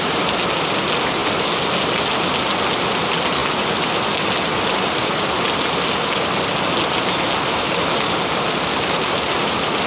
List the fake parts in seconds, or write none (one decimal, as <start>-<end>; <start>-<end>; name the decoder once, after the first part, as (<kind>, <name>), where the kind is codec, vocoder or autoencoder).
none